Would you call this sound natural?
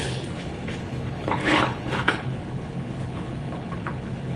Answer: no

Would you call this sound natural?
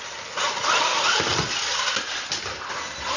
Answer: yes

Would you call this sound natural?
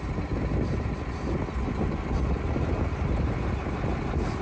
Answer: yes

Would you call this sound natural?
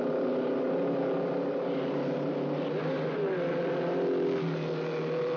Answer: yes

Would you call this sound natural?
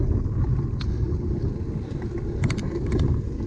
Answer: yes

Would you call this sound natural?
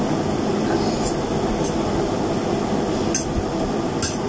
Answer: yes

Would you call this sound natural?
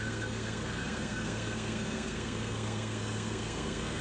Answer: no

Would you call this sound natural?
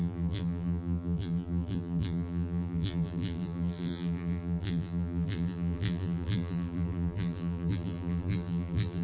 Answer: no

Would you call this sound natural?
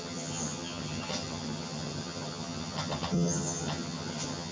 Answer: no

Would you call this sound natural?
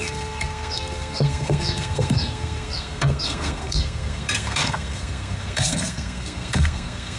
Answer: no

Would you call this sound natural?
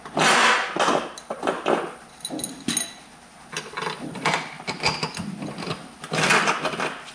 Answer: yes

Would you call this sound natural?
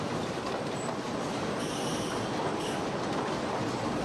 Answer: yes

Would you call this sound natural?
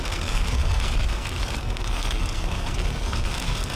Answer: no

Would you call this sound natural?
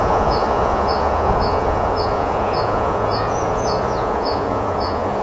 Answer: no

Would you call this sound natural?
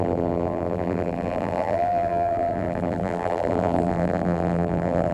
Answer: no